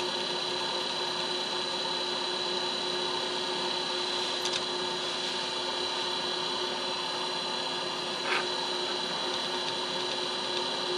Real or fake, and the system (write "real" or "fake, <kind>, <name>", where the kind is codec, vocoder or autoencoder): real